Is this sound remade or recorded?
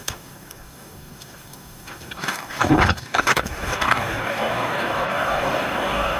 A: remade